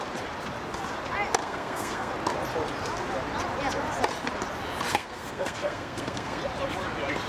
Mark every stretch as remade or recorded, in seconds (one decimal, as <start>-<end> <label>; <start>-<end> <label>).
0.0-1.4 recorded; 1.4-2.1 remade; 2.1-4.9 recorded; 4.9-6.4 remade; 6.4-7.3 recorded

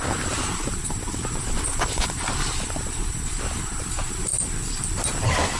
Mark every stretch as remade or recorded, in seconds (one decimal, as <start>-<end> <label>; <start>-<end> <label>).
0.0-4.3 remade; 4.3-5.6 recorded

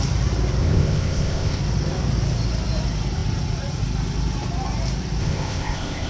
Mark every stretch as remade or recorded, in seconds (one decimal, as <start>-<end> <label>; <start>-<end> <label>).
0.0-0.6 recorded; 0.6-1.6 remade; 1.6-5.2 recorded; 5.2-6.1 remade